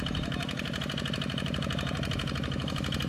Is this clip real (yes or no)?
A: no